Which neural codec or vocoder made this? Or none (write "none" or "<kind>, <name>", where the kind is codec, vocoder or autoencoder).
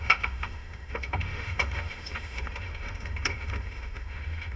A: autoencoder, DAC-VAE